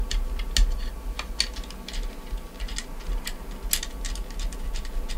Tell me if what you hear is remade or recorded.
recorded